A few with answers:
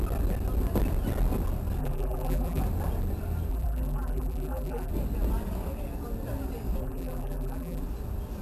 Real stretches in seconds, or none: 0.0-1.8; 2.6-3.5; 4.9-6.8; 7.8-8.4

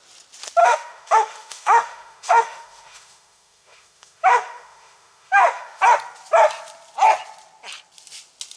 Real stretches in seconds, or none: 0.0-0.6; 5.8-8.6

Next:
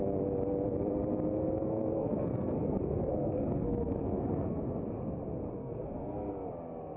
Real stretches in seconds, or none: 0.0-1.4; 4.6-5.6; 6.3-7.0